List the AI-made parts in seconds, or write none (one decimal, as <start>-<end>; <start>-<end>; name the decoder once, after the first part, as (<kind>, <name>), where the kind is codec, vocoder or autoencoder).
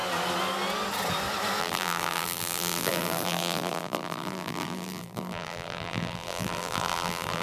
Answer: 1.6-7.4 (vocoder, BigVGAN v2)